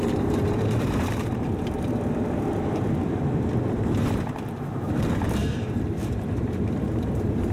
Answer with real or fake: fake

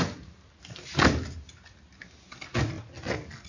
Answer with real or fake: real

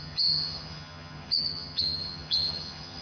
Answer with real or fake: fake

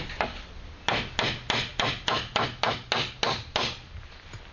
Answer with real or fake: real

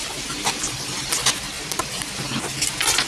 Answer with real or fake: real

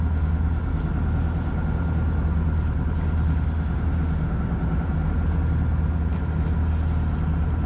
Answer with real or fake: real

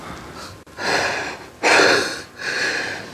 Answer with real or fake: real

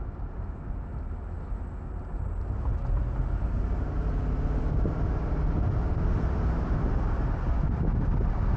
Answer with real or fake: real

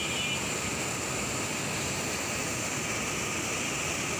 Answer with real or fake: real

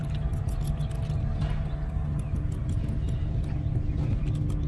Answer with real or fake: real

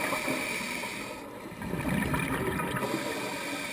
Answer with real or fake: real